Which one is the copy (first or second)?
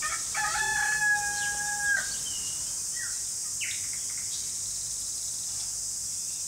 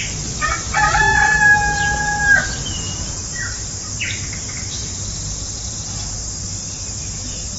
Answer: second